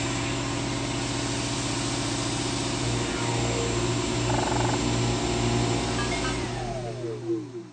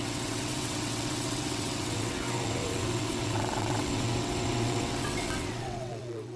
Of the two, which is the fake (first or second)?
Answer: second